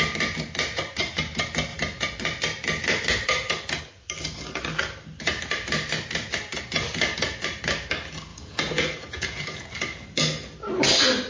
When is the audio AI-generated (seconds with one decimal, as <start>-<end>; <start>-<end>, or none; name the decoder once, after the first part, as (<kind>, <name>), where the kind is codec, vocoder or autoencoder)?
8.3-9.6 (vocoder, Vocos)

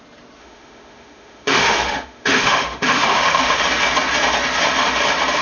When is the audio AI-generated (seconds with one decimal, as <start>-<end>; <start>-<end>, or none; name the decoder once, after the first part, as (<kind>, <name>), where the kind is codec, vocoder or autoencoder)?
0.4-3.6 (autoencoder, DAC-VAE)

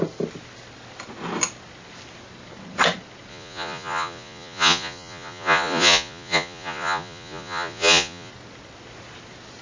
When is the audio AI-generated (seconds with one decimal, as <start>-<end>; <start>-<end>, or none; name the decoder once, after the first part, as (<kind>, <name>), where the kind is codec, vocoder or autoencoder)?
3.3-8.3 (vocoder, Vocos)

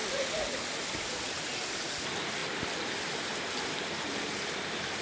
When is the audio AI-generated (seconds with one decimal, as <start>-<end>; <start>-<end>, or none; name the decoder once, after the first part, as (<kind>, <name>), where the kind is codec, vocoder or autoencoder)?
none